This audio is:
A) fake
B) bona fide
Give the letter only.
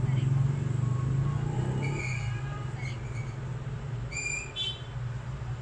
B